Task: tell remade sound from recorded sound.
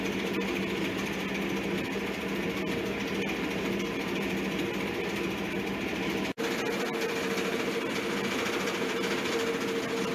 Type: recorded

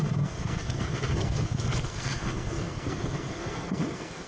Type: remade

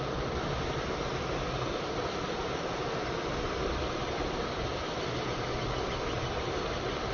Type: recorded